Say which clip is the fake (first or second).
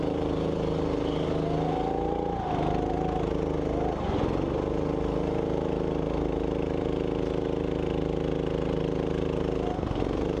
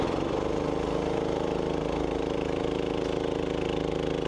second